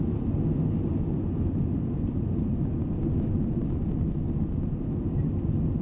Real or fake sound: real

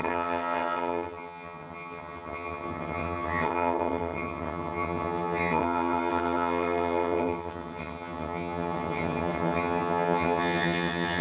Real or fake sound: fake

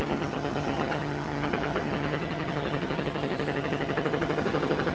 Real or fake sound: fake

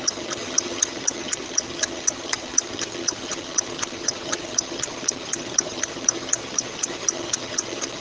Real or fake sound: fake